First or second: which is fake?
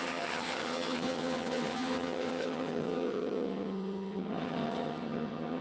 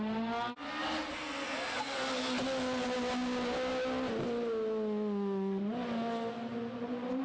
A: first